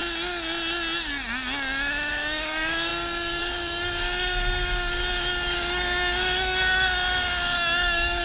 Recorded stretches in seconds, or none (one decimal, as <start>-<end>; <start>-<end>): 0.0-2.1